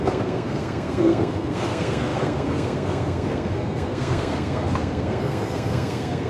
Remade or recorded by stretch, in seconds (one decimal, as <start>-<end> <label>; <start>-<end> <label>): 0.0-6.3 remade